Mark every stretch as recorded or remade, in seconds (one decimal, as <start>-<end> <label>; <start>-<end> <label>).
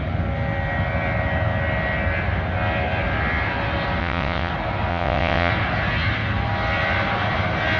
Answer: 0.0-4.0 recorded; 4.0-4.5 remade; 4.5-4.9 recorded; 4.9-5.5 remade; 5.5-7.8 recorded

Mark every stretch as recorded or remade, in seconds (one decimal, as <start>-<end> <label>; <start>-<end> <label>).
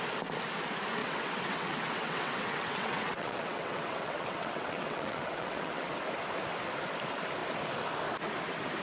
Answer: 0.0-1.0 recorded; 1.0-5.9 remade; 5.9-8.8 recorded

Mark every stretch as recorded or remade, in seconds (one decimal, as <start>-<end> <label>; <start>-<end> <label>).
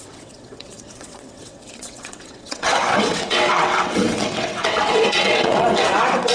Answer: 0.0-6.3 remade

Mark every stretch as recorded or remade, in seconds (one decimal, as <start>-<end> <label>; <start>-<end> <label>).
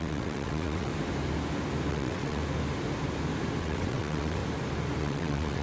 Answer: 0.0-0.9 remade; 0.9-1.9 recorded; 1.9-2.4 remade; 2.4-3.6 recorded; 3.6-4.4 remade; 4.4-5.0 recorded; 5.0-5.6 remade